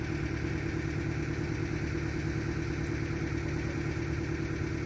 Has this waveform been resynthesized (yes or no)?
no